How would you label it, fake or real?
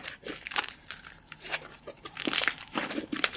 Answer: fake